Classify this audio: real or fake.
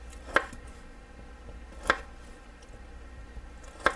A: real